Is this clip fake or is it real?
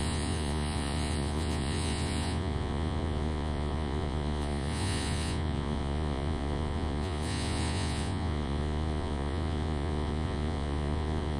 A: fake